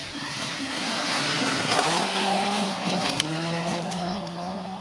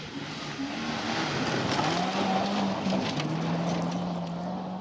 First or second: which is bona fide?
second